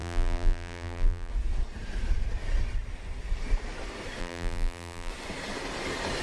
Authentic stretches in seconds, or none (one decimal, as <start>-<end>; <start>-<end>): 1.3-4.2; 5.1-6.2